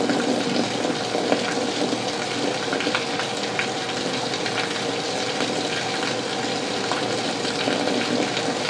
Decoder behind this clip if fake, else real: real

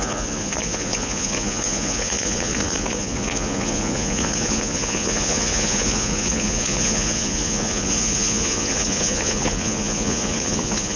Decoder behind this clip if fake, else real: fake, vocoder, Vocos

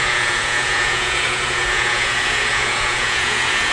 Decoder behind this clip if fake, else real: fake, vocoder, Vocos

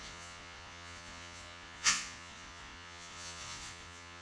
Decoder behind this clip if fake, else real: fake, vocoder, Vocos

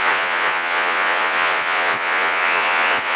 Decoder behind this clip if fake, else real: fake, vocoder, Vocos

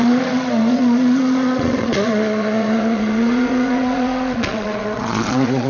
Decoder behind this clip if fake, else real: fake, vocoder, Vocos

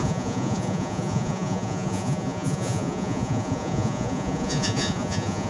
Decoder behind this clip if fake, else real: fake, vocoder, Vocos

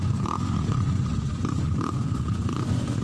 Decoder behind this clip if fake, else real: fake, vocoder, Vocos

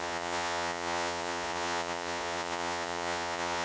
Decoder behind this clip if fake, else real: fake, vocoder, Vocos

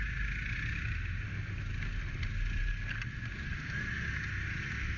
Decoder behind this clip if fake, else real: real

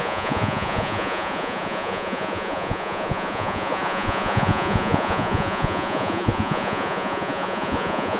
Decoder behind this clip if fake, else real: fake, vocoder, Vocos